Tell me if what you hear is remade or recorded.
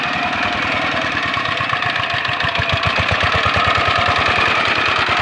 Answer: recorded